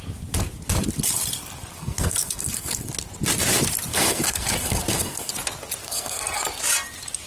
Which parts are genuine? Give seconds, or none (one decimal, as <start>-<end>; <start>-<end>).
0.0-1.8; 2.9-3.9; 5.3-5.8; 6.4-7.3